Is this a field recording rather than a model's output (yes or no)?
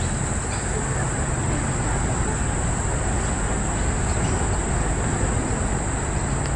yes